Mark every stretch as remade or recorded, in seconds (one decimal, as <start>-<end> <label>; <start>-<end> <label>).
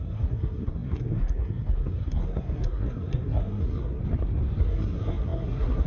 0.0-4.0 remade; 4.0-4.6 recorded; 4.6-5.9 remade